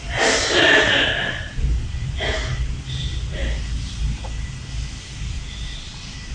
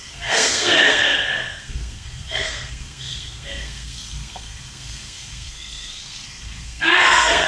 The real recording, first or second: first